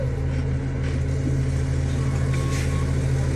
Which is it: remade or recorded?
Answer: recorded